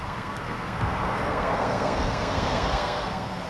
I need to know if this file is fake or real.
fake